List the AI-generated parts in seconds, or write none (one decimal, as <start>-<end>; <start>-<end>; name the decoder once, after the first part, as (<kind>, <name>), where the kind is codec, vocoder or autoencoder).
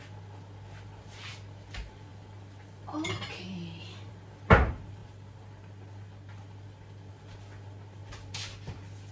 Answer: 8.0-8.5 (vocoder, BigVGAN v2)